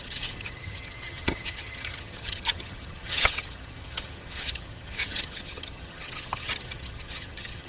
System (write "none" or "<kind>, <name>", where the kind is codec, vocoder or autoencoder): vocoder, HiFi-GAN